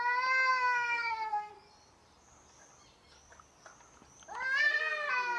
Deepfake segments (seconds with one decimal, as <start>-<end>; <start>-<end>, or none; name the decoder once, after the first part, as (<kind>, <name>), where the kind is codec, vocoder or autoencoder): 0.5-1.5 (codec, SNAC)

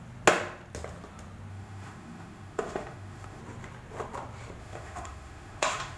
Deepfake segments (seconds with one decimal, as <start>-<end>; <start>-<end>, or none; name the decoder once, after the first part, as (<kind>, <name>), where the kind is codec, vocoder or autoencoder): 1.5-3.4 (autoencoder, DAC-VAE); 4.6-6.0

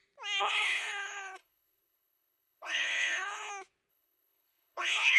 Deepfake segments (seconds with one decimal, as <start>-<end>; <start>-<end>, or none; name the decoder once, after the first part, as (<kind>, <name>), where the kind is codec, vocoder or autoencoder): 0.4-3.5 (codec, HILCodec); 3.9-5.2